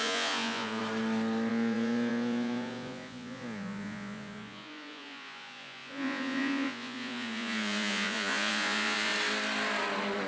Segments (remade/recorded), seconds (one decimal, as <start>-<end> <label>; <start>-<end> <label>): 0.0-0.8 remade; 0.8-1.5 recorded; 1.5-9.1 remade; 9.1-10.3 recorded